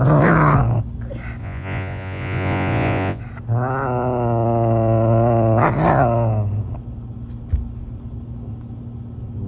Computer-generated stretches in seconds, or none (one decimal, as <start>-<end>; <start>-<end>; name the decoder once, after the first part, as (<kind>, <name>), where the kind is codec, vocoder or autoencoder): 1.4-3.2 (vocoder, Vocos)